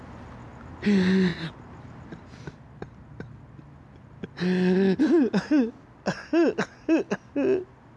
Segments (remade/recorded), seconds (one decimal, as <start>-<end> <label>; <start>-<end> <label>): 0.0-8.0 recorded